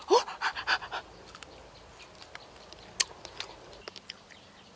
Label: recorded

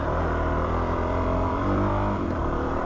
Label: remade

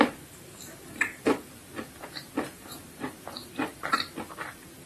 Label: remade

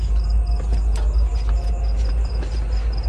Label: recorded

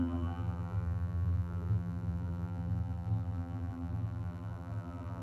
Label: remade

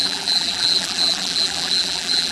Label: remade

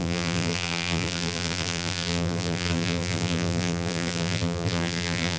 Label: remade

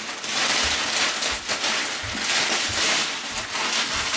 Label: recorded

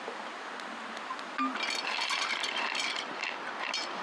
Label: recorded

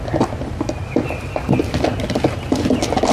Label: recorded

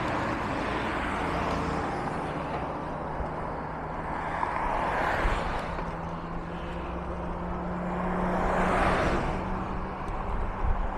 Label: recorded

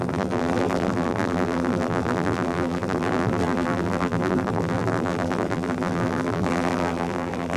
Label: remade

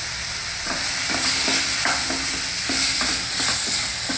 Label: recorded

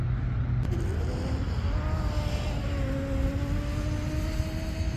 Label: recorded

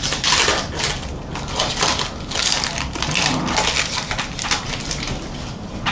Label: recorded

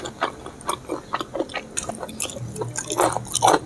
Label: recorded